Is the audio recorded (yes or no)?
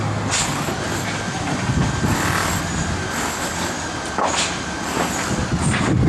yes